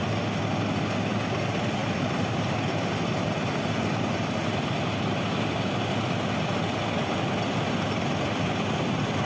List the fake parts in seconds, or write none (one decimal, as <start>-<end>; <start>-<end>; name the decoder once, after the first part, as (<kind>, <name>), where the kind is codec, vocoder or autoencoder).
1.8-3.5 (vocoder, BigVGAN v2)